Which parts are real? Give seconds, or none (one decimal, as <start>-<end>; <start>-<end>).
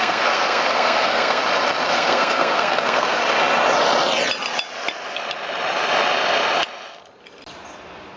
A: 1.4-1.9; 3.2-8.2